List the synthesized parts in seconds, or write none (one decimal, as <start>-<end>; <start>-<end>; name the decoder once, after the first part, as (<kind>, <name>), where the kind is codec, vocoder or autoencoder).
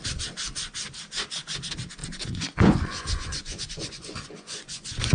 2.0-5.1 (vocoder, Vocos)